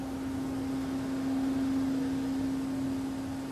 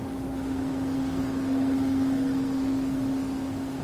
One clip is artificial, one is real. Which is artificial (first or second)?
second